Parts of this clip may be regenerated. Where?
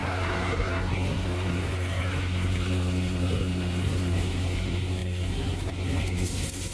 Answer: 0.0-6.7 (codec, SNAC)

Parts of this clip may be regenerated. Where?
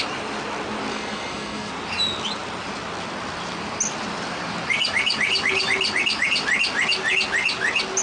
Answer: 0.9-1.7 (codec, SNAC)